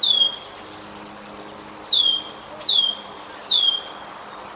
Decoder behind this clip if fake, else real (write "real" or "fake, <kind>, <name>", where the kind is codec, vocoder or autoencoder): real